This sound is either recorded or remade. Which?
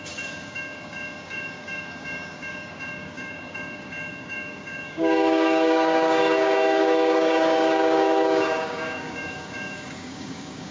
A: remade